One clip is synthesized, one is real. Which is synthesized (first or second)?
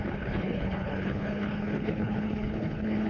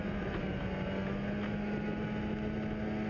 first